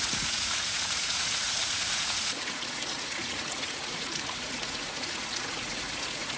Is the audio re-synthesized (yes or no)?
yes